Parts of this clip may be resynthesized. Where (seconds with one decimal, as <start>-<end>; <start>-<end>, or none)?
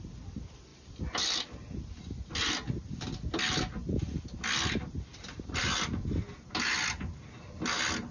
none